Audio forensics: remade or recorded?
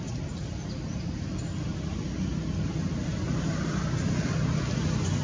recorded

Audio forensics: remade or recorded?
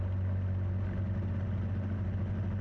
recorded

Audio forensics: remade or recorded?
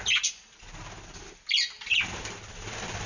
recorded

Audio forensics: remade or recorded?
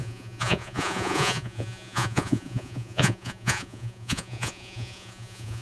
remade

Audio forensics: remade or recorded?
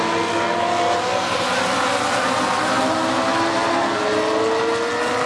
recorded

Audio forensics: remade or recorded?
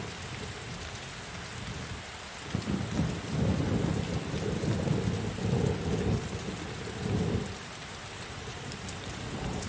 recorded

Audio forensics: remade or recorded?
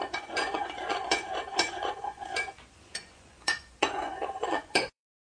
remade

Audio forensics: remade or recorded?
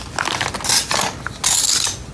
recorded